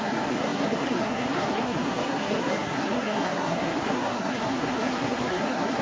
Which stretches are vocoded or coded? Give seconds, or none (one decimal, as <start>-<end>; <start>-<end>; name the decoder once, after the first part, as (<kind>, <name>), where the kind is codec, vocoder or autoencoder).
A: 0.0-5.8 (codec, SNAC)